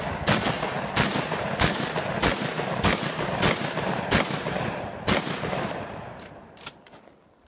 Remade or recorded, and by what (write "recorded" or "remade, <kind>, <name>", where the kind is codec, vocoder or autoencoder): recorded